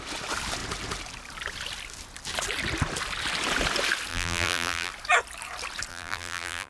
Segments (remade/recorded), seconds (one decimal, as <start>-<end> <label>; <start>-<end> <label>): 0.0-4.1 recorded; 4.1-4.9 remade; 4.9-5.9 recorded; 5.9-6.7 remade